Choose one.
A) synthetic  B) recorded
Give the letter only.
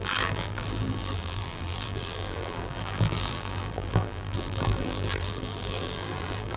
A